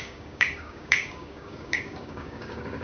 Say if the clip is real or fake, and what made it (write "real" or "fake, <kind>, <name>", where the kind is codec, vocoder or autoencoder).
fake, codec, DAC